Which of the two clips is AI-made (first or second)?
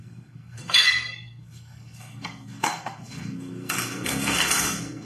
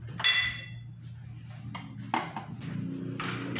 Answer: first